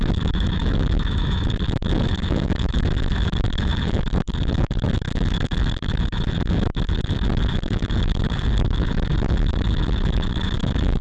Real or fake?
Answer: fake